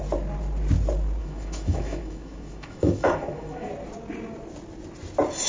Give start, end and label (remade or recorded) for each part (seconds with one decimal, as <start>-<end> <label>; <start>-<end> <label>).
0.0-1.2 recorded; 1.2-3.7 remade; 3.7-5.5 recorded

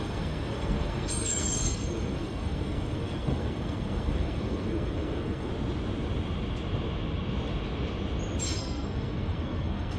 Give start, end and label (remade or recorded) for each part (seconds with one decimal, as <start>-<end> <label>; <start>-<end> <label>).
0.0-5.5 remade; 5.5-8.6 recorded; 8.6-10.0 remade

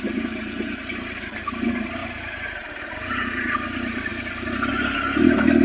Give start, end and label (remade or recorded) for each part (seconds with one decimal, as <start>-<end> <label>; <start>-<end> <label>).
0.0-2.0 recorded; 2.0-3.1 remade; 3.1-5.6 recorded

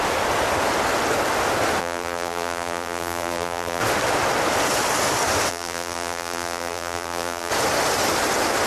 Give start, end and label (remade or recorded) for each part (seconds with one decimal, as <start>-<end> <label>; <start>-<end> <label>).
0.0-1.8 recorded; 1.8-3.8 remade; 3.8-5.5 recorded; 5.5-7.5 remade; 7.5-8.7 recorded

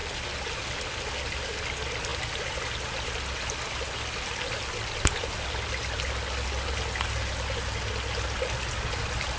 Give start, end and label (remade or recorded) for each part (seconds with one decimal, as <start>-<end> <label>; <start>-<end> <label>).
0.0-9.4 recorded

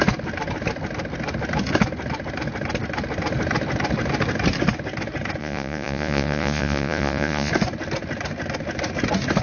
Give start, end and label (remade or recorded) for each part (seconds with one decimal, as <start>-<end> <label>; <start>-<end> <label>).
0.0-5.4 recorded; 5.4-7.5 remade; 7.5-9.4 recorded